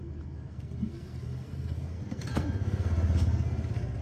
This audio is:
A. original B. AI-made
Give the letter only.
B